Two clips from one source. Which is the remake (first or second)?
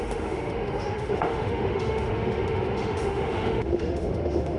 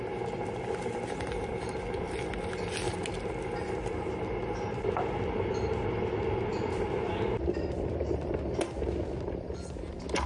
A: first